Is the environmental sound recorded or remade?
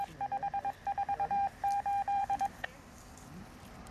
remade